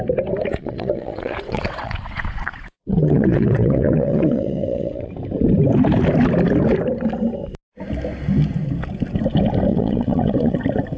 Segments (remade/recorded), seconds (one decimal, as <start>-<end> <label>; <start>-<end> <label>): 0.0-0.6 recorded; 0.6-5.1 remade; 5.1-9.7 recorded; 9.7-10.6 remade; 10.6-11.0 recorded